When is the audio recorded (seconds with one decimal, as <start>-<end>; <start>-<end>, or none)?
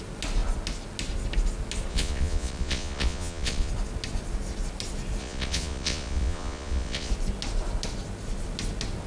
0.0-1.9; 3.7-5.2; 7.1-9.1